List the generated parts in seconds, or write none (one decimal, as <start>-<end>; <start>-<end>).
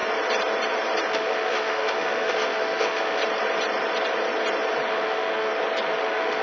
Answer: 1.1-3.2; 4.9-5.5; 6.0-6.4